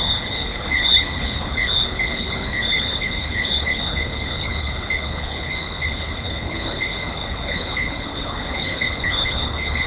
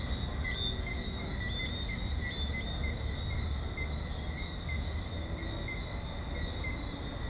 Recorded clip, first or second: second